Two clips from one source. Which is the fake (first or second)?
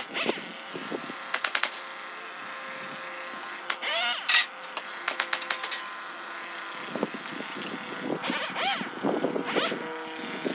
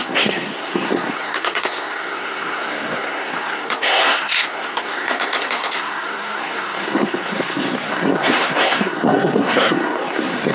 second